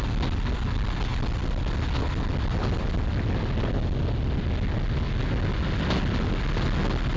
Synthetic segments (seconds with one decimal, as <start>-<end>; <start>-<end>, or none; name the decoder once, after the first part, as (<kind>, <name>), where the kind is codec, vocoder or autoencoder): none